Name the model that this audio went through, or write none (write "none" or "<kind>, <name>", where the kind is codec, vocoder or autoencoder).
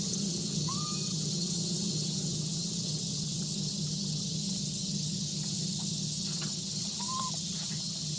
vocoder, HiFi-GAN